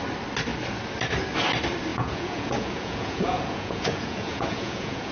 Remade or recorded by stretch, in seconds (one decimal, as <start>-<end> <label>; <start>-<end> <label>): 0.0-1.9 recorded; 1.9-5.1 remade

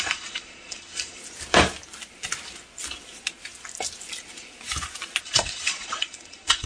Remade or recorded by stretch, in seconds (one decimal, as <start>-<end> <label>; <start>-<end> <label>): 0.0-1.2 remade; 1.2-5.2 recorded; 5.2-6.7 remade

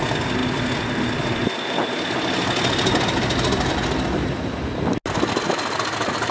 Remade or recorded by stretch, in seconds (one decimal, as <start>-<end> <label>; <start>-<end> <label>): 0.0-6.3 recorded

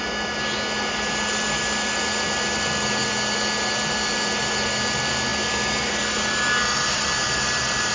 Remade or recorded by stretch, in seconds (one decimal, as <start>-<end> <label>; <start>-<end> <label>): 0.0-7.9 recorded

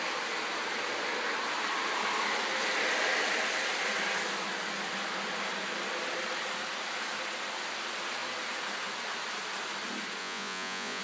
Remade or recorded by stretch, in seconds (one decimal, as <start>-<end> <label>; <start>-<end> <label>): 0.0-10.2 recorded; 10.2-11.0 remade

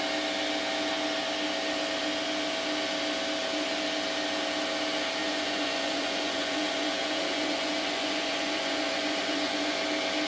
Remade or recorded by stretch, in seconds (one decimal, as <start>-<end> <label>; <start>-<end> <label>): 0.0-5.2 recorded; 5.2-9.8 remade; 9.8-10.3 recorded